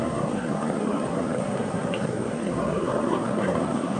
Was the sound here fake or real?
fake